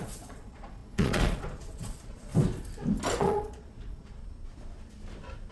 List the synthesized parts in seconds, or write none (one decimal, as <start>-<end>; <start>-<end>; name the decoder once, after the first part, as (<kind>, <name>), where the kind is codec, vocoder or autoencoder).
0.0-2.3 (vocoder, Vocos); 3.2-4.2